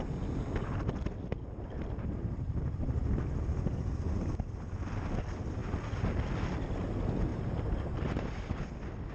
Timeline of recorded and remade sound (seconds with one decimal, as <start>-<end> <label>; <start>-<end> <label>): 0.0-7.3 recorded; 7.3-8.4 remade; 8.4-9.1 recorded